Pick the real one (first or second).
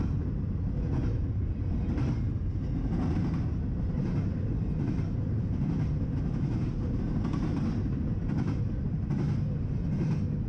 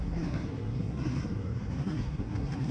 first